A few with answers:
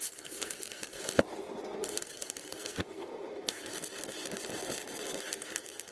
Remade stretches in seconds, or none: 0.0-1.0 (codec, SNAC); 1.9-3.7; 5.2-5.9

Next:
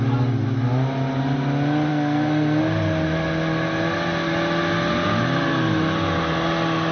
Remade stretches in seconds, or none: 1.9-2.6 (codec, SNAC)